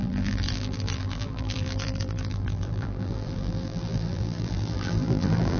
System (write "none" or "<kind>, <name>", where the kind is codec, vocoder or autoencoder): vocoder, BigVGAN v2